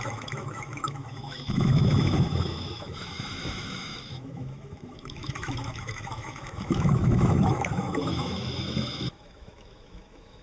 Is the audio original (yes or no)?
no